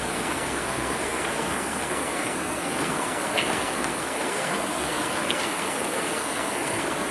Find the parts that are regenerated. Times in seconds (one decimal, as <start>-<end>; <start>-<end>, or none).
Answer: 0.0-7.1